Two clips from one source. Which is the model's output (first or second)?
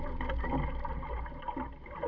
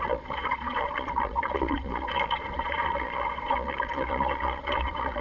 second